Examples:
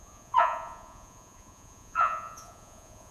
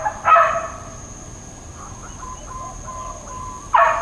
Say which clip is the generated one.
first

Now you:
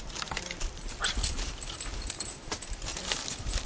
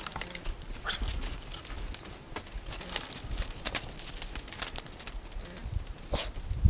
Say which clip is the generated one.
first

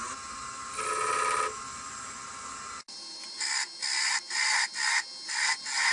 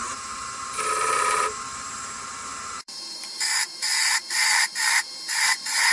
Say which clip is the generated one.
second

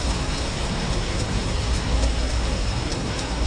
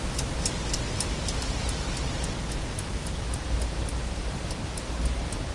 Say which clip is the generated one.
first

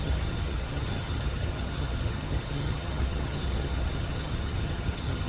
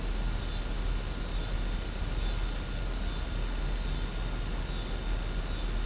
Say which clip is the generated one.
first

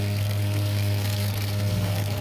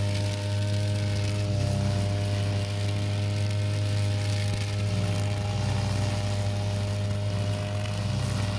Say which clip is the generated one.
first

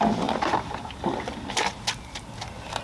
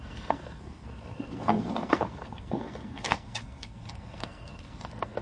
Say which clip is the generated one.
second